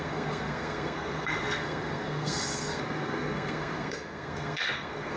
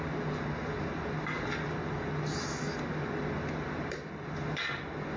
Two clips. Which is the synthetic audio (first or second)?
first